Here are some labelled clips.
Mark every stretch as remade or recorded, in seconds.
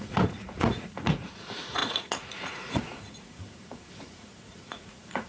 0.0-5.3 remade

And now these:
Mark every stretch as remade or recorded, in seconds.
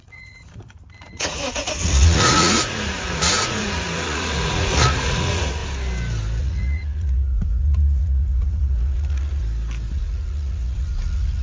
0.0-5.6 remade; 5.6-6.4 recorded; 6.4-9.4 remade; 9.4-9.9 recorded; 9.9-11.4 remade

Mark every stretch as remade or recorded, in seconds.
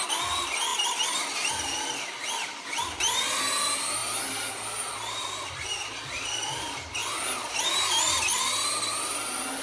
0.0-9.6 recorded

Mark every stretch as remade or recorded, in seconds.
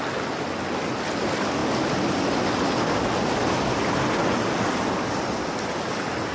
0.0-6.3 recorded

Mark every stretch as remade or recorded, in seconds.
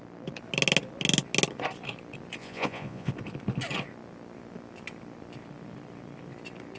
0.0-2.4 recorded; 2.4-3.1 remade; 3.1-6.8 recorded